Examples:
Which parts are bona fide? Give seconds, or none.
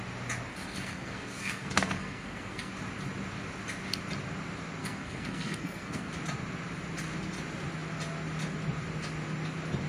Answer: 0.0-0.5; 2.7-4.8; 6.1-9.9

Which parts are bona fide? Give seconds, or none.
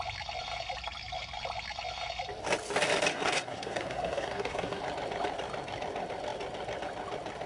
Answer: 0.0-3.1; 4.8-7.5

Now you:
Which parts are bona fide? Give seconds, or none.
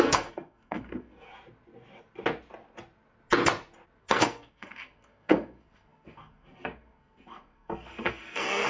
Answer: 1.3-4.0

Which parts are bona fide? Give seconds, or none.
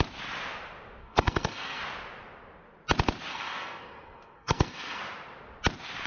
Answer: 0.0-1.0; 1.8-3.3; 5.0-6.1